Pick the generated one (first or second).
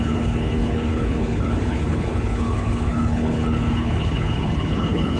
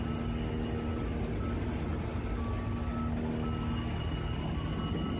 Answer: first